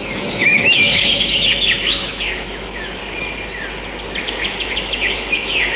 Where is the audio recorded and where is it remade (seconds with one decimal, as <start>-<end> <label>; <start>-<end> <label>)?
0.0-3.0 remade; 3.0-4.2 recorded; 4.2-5.8 remade